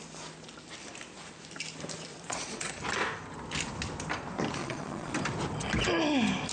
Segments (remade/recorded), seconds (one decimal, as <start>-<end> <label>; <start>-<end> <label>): 0.0-2.1 recorded; 2.1-2.7 remade; 2.7-4.6 recorded; 4.6-5.1 remade; 5.1-6.5 recorded